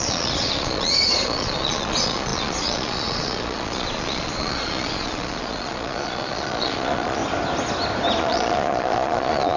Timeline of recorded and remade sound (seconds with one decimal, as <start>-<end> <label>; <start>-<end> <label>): 0.0-7.2 remade; 7.2-8.2 recorded; 8.2-9.6 remade